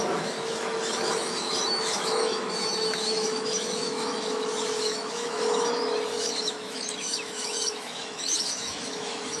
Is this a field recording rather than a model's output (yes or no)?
no